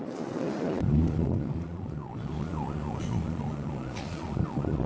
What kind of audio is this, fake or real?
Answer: fake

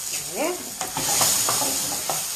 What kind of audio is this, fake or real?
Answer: real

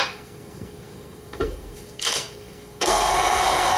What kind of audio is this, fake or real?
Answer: fake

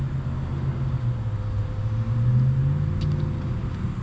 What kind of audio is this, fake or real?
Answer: real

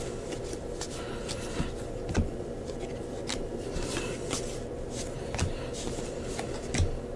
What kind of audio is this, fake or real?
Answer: real